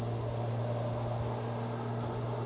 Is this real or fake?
real